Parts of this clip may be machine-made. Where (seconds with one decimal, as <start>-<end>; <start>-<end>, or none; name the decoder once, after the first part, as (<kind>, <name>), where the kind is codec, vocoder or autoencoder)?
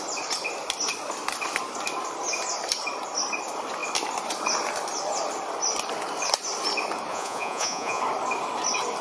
7.1-8.0 (vocoder, Vocos)